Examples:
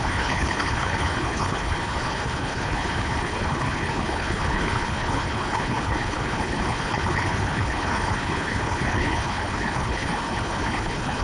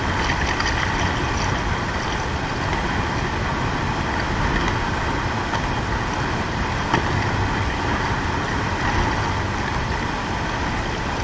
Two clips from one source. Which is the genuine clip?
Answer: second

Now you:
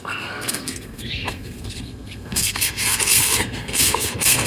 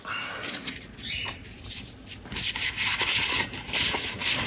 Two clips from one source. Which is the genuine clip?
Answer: second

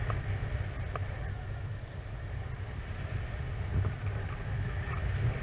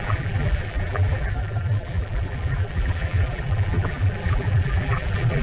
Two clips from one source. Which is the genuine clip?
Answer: first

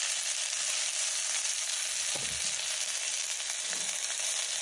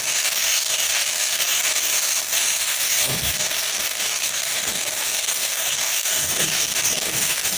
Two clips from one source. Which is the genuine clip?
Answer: first